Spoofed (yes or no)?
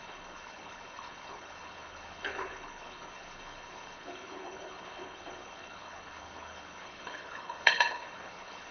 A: yes